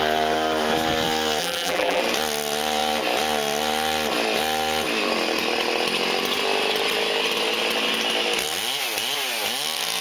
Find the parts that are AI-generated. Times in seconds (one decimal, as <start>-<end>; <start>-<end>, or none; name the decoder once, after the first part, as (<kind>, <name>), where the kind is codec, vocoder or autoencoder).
1.4-2.0 (vocoder, BigVGAN v2)